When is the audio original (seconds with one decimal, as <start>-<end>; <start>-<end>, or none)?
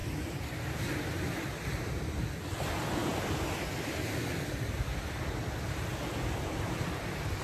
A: 0.0-7.4